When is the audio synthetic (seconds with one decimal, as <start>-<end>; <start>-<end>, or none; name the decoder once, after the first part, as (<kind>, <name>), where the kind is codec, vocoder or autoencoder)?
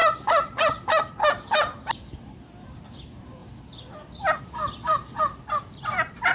1.1-3.4 (vocoder, BigVGAN v2); 4.4-6.3